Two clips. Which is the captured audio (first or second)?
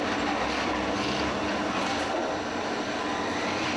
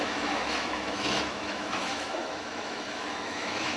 first